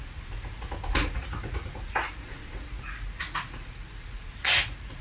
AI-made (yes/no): yes